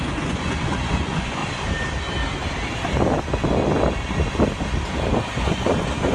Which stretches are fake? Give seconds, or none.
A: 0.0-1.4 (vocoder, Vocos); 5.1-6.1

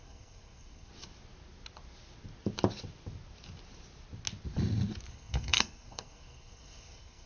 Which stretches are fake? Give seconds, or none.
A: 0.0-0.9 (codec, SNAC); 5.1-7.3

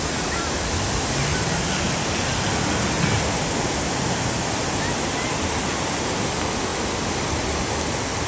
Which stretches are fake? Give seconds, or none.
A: none